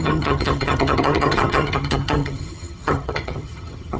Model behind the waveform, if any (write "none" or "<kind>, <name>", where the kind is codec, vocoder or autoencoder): vocoder, HiFi-GAN